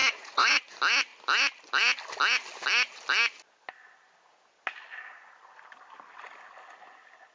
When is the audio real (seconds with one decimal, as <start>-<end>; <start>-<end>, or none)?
0.6-7.3